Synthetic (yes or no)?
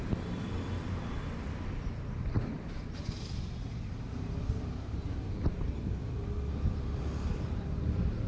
no